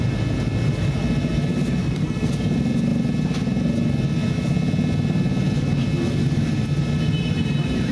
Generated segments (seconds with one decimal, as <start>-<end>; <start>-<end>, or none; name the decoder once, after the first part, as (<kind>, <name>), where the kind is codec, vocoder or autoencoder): 1.8-2.3 (codec, SNAC)